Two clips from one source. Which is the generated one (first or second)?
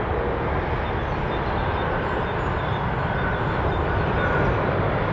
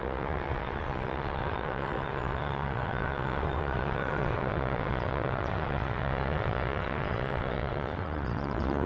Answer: second